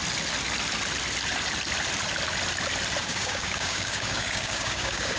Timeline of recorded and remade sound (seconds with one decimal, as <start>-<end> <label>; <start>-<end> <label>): 0.0-3.0 recorded; 3.0-5.2 remade